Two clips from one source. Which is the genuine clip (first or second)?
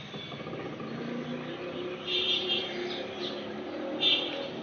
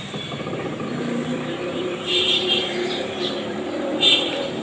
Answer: first